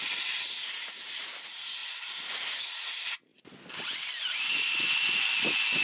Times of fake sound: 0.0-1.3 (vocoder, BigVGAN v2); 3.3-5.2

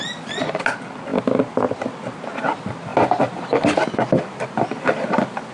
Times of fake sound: 0.0-1.1 (vocoder, BigVGAN v2); 2.4-5.5